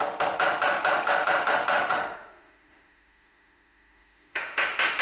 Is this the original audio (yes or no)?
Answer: no